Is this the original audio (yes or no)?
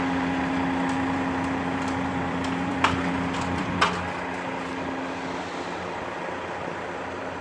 no